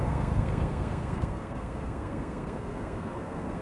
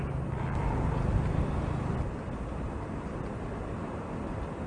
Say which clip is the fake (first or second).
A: first